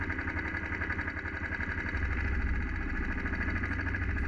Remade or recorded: recorded